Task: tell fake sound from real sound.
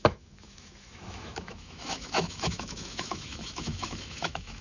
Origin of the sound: fake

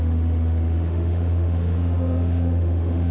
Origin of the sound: fake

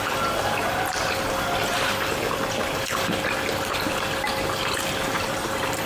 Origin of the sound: real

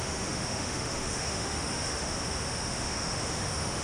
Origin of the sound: fake